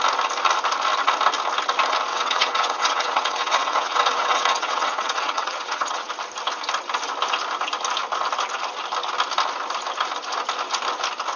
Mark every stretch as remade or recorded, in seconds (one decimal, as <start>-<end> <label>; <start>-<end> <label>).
0.0-2.1 recorded; 2.1-6.1 remade; 6.1-11.4 recorded